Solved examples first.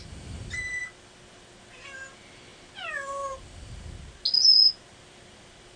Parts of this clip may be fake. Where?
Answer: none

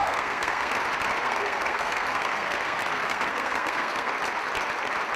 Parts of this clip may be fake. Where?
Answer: 0.0-0.7 (codec, SNAC); 1.2-4.1

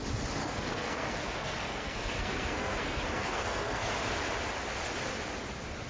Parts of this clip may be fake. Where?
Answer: 0.4-3.9 (codec, SNAC)

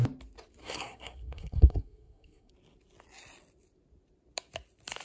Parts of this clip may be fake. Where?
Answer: 0.6-2.5 (codec, SNAC)

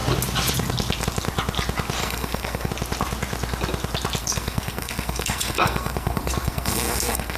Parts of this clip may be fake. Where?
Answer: 2.0-2.7 (codec, SNAC); 4.2-7.4